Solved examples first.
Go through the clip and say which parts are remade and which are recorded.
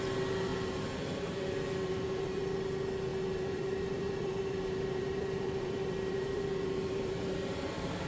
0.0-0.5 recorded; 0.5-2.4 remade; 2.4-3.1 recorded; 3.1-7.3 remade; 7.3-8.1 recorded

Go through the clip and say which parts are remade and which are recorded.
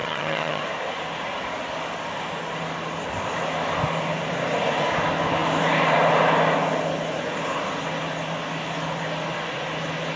0.0-0.6 remade; 0.6-10.2 recorded